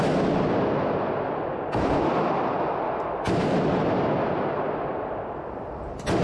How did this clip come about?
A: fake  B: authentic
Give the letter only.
B